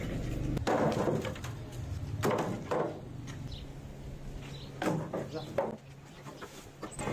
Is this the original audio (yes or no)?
yes